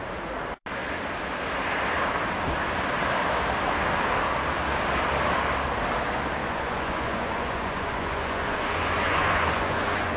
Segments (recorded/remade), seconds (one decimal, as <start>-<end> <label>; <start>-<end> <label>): 0.0-6.4 recorded; 6.4-10.2 remade